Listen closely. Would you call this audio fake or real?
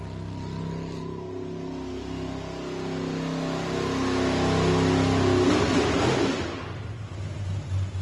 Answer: real